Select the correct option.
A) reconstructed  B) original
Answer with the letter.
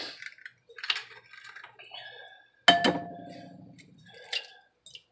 B